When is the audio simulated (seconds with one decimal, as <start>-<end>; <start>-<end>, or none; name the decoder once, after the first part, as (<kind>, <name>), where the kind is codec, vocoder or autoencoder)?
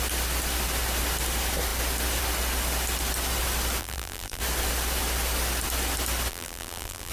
3.8-4.4 (vocoder, BigVGAN v2); 6.3-7.1